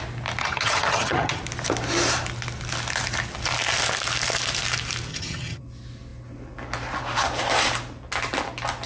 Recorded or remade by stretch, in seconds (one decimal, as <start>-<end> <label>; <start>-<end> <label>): 0.0-0.4 recorded; 0.4-1.4 remade; 1.4-5.1 recorded; 5.1-5.6 remade; 5.6-8.9 recorded